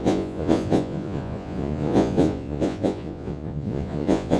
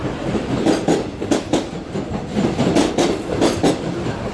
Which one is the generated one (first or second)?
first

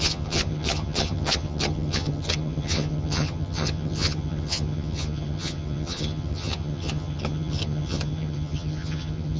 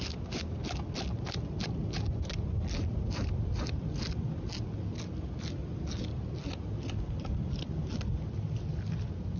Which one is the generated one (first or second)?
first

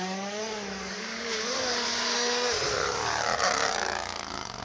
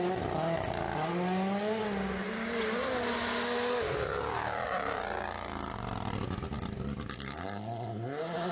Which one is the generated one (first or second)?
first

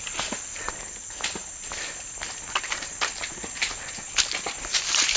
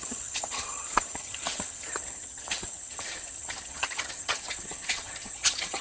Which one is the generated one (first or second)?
second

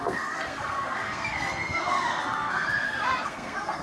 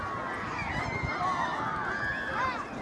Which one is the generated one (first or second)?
first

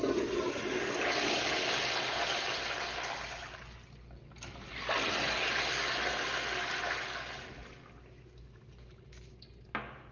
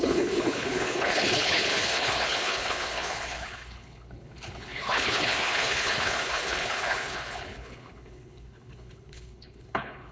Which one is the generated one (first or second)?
second